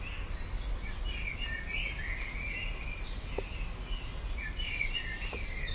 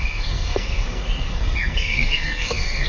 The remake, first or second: second